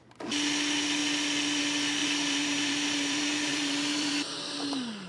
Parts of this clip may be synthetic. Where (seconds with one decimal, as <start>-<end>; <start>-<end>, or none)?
2.0-4.1